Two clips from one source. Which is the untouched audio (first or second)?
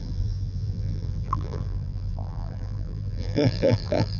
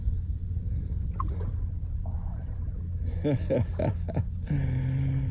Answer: second